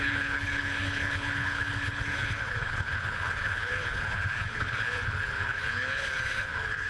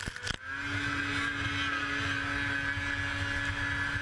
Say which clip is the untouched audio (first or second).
second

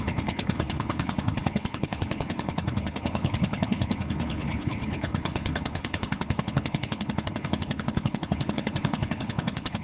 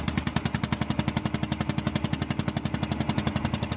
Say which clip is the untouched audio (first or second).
second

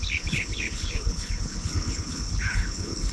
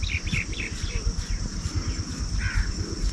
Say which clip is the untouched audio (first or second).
second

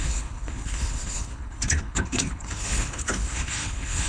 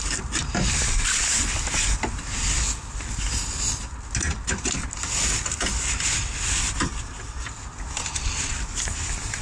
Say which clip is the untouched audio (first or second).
second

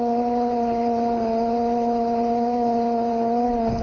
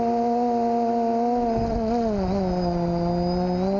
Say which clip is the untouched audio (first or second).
second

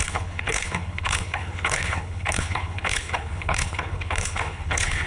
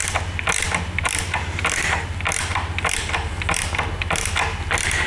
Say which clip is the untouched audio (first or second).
second